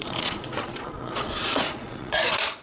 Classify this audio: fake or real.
fake